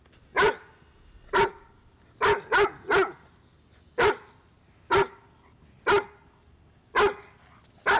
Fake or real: real